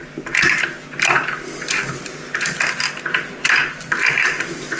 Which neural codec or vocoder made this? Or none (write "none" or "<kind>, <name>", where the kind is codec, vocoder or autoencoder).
none